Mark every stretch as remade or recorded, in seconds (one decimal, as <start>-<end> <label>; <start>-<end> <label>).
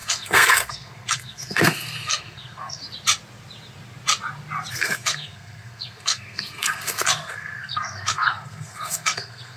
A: 0.0-2.8 remade; 2.8-4.7 recorded; 4.7-9.6 remade